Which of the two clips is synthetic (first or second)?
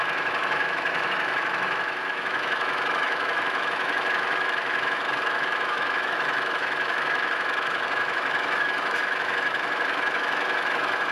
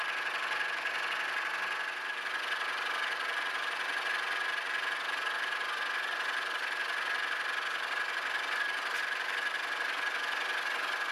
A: first